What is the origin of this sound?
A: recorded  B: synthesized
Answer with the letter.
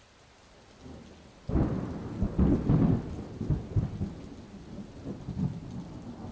A